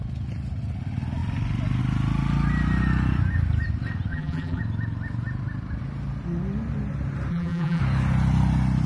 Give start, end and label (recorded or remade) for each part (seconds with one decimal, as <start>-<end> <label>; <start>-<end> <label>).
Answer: 0.0-4.1 recorded; 4.1-4.6 remade; 4.6-7.3 recorded; 7.3-7.8 remade; 7.8-8.9 recorded